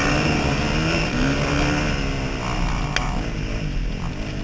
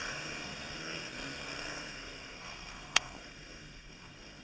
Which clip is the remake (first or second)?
second